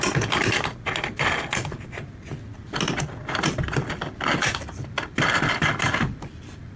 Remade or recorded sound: recorded